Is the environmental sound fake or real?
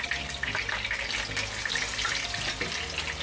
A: real